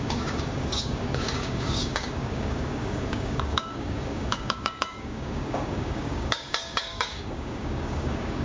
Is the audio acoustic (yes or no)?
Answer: no